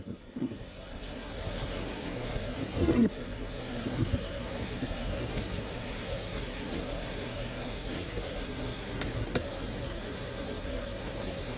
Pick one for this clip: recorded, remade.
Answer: remade